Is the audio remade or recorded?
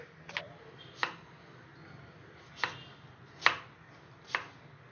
recorded